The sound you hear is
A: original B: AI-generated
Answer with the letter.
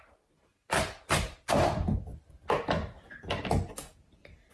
A